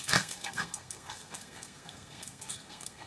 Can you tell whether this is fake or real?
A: fake